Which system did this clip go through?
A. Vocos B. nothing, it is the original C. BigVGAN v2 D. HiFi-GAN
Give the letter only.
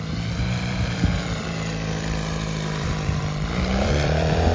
C